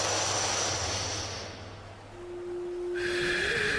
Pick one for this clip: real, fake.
real